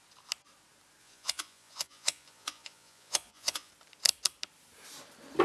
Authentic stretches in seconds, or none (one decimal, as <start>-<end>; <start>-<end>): 0.0-1.0; 3.7-5.4